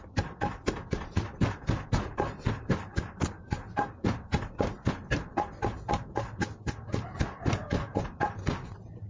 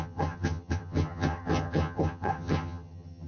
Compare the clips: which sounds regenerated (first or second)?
second